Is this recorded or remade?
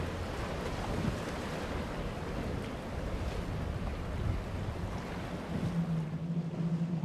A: recorded